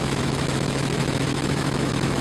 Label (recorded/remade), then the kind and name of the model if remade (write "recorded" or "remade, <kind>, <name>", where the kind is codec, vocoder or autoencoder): remade, autoencoder, DAC-VAE